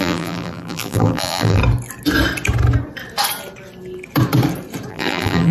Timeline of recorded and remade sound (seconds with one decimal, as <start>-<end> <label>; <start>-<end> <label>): 0.0-1.6 remade; 1.6-4.9 recorded; 4.9-5.5 remade